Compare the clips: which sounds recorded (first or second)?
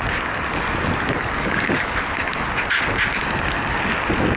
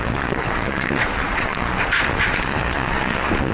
first